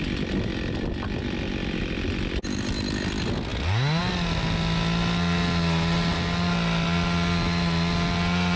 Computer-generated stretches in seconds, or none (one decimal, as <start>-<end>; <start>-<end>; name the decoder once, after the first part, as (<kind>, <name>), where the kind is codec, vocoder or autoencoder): none